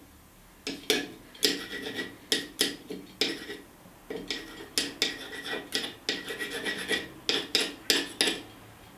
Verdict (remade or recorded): recorded